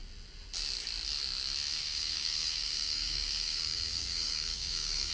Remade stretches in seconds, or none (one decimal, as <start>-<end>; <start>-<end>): 1.7-5.1